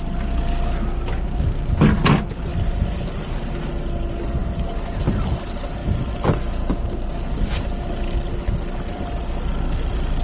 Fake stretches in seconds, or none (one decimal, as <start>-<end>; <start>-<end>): none